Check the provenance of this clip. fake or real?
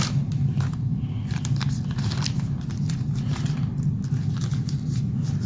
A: real